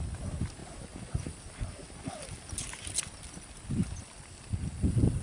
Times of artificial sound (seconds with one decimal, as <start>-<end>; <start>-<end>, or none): none